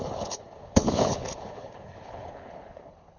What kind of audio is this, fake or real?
fake